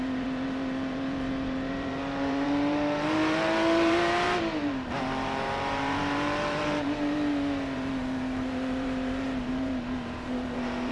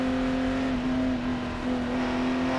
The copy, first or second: first